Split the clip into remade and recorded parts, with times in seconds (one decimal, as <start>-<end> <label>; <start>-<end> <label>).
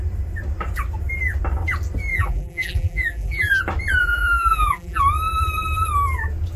0.0-2.1 recorded; 2.1-3.6 remade; 3.6-4.0 recorded; 4.0-5.0 remade; 5.0-6.6 recorded